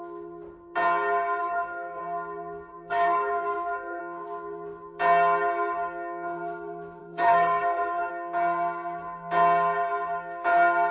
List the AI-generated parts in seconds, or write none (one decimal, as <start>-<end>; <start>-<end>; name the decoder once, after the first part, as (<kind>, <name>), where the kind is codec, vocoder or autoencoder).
1.4-2.0 (codec, SNAC); 2.7-4.0; 7.0-8.1